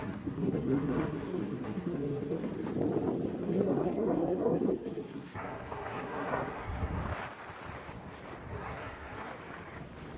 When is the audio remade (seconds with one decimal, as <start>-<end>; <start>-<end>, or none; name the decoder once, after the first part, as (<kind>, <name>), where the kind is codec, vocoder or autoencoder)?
0.0-2.5 (codec, SNAC); 3.4-7.0; 8.5-9.3